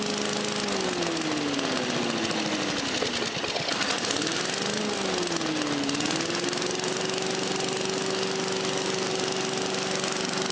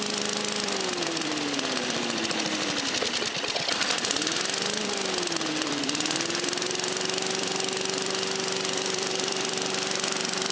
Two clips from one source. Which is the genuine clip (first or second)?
first